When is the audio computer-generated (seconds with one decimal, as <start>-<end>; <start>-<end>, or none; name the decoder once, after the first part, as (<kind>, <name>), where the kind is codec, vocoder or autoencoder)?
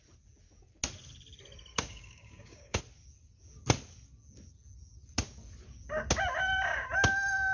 1.7-2.8 (codec, DAC)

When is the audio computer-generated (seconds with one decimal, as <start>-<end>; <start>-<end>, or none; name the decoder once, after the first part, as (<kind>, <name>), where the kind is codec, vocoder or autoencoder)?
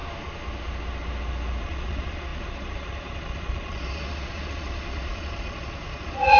1.6-6.4 (vocoder, Vocos)